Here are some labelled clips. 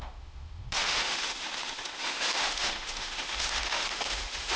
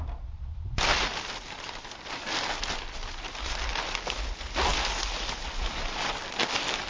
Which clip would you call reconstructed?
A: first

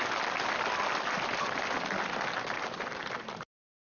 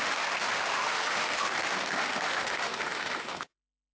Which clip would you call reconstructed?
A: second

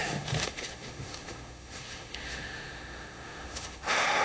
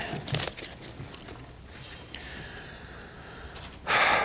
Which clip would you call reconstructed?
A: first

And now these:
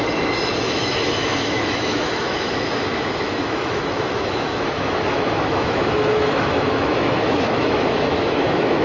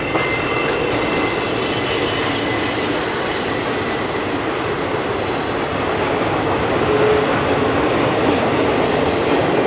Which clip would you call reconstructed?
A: first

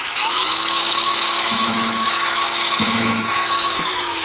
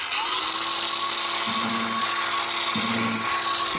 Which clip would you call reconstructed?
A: first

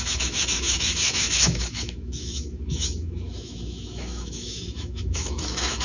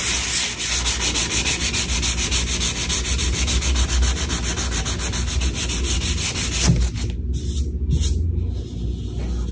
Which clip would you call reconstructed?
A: first